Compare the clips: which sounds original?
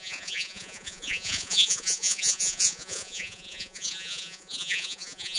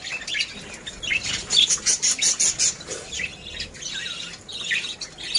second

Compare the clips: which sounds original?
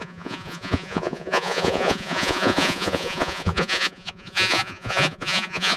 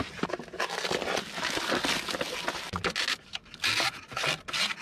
second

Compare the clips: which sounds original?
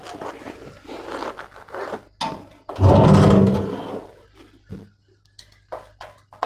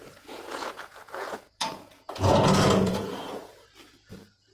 first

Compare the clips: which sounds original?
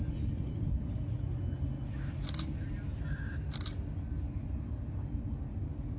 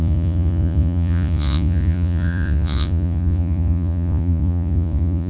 first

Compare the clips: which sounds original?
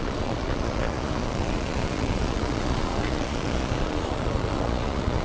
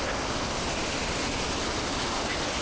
second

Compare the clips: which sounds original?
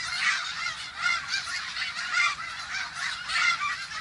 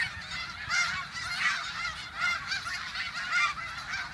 second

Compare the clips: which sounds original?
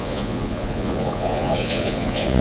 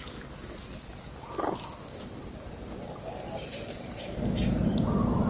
second